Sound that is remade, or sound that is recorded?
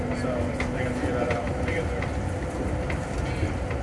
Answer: recorded